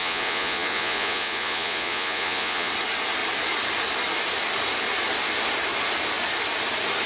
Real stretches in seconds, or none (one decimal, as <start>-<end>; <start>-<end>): 2.7-7.1